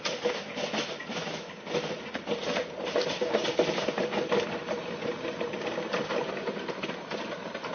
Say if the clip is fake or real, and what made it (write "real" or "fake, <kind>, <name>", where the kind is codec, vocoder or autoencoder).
real